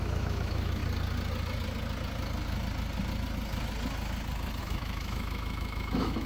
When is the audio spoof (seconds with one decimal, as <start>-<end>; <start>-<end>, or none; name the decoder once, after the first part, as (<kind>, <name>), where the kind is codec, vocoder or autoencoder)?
0.0-0.8 (autoencoder, DAC-VAE); 4.6-6.3

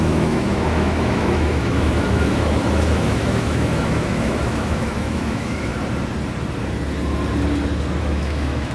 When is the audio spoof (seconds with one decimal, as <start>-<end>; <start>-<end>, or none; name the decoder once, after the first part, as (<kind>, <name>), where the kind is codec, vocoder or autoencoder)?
0.0-5.7 (autoencoder, DAC-VAE); 8.0-8.7

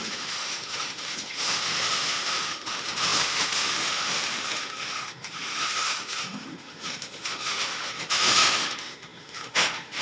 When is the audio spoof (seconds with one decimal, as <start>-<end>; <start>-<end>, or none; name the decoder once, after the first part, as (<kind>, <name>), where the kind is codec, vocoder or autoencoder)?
0.0-10.0 (autoencoder, DAC-VAE)